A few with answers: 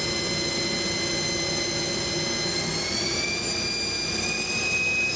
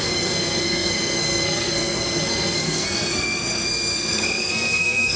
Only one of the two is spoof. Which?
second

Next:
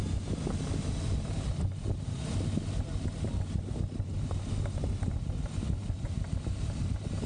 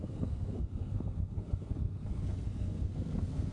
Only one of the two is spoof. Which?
second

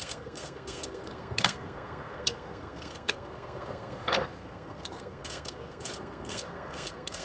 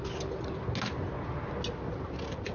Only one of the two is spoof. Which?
first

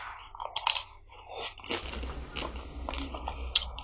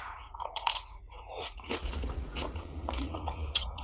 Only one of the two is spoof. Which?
second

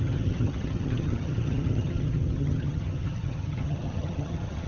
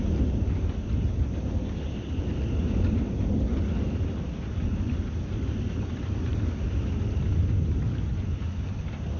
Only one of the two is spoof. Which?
first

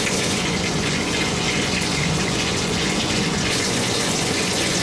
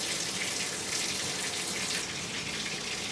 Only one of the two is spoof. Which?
first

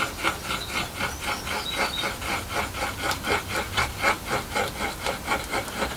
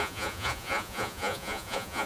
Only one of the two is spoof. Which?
second